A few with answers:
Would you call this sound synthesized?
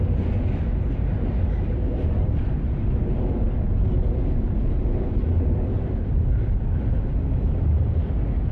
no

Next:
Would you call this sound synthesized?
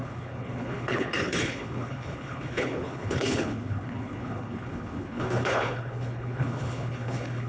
yes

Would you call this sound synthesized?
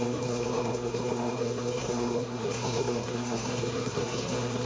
yes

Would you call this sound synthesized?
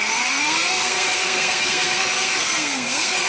yes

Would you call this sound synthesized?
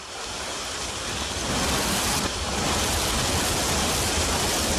no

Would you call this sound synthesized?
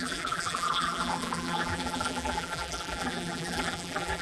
yes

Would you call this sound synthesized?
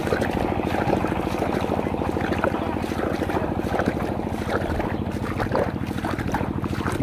no